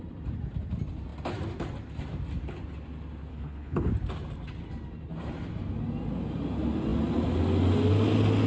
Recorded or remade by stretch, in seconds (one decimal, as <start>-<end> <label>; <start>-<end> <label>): 0.0-3.3 recorded; 3.3-3.9 remade; 3.9-8.5 recorded